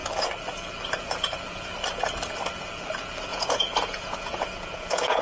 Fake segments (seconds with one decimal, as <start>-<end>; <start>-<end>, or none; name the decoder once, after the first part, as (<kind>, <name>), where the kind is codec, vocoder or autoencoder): 3.3-5.2 (vocoder, Vocos)